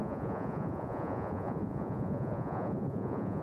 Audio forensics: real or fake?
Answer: fake